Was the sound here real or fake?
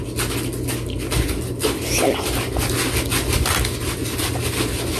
real